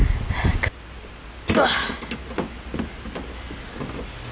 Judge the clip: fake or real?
real